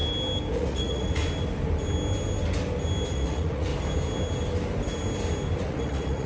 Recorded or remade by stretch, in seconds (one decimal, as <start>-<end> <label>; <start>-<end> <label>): 0.0-0.5 recorded; 0.5-1.2 remade; 1.2-3.1 recorded; 3.1-3.7 remade; 3.7-5.6 recorded; 5.6-6.3 remade